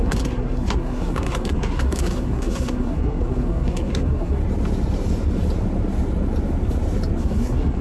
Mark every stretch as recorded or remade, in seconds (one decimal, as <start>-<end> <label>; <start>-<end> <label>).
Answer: 0.0-4.4 remade; 4.4-7.2 recorded; 7.2-7.8 remade